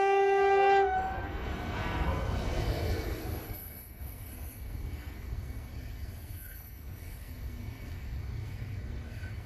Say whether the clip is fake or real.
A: fake